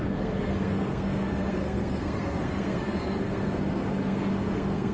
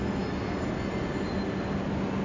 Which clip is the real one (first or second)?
second